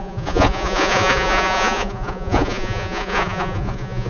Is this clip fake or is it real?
fake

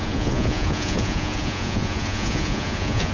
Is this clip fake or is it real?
fake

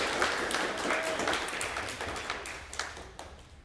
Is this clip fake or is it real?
real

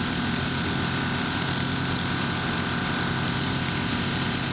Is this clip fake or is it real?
real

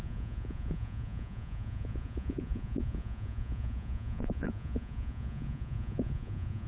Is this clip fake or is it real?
fake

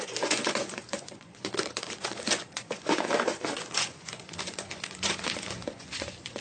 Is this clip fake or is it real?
fake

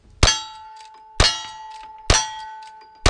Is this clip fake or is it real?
real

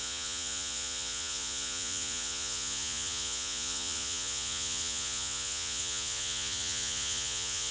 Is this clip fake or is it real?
fake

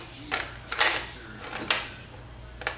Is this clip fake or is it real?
real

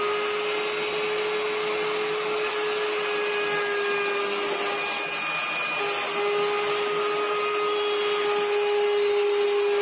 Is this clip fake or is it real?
real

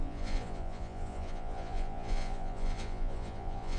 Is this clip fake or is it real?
fake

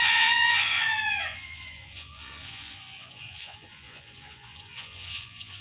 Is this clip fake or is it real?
fake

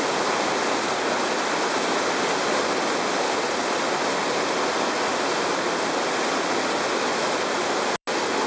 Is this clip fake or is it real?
real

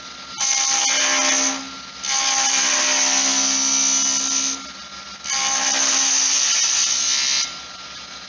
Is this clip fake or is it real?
real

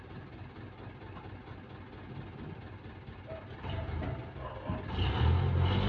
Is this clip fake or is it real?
real